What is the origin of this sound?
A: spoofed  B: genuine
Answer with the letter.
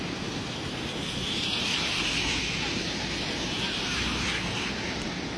B